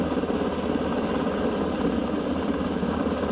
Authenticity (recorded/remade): recorded